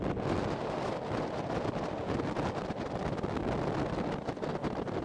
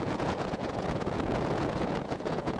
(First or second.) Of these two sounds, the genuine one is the first